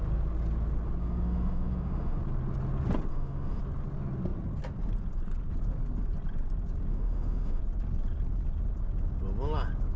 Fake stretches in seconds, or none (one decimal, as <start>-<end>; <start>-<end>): 1.0-2.2; 3.1-3.6; 6.9-7.6